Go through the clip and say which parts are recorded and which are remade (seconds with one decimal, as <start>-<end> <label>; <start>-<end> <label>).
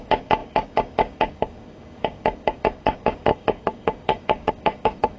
0.0-5.2 remade